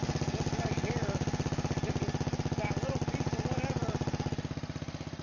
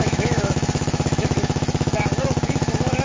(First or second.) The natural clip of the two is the first